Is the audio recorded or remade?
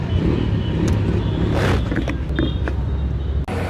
recorded